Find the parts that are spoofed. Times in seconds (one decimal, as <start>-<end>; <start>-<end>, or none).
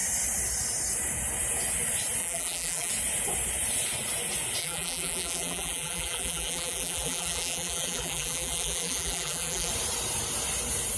2.2-2.9; 4.6-9.7